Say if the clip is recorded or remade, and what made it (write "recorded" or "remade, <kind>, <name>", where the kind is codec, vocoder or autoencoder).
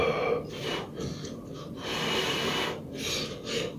recorded